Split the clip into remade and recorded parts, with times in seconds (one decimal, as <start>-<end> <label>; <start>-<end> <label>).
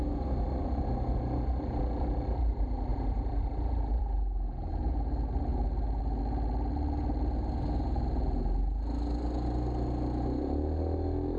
0.0-2.9 recorded; 2.9-4.0 remade; 4.0-11.4 recorded